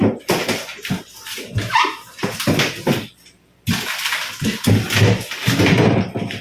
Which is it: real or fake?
real